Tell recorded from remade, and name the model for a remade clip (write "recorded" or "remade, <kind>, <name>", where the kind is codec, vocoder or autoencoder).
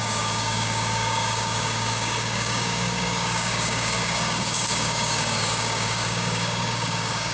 remade, codec, DAC